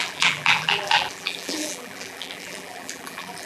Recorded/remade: remade